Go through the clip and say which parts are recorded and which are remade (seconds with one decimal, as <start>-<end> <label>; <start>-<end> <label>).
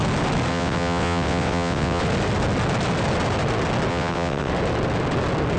0.0-0.5 recorded; 0.5-2.0 remade; 2.0-3.9 recorded; 3.9-4.5 remade; 4.5-5.6 recorded